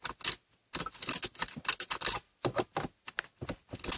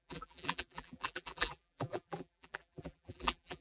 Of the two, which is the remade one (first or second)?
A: second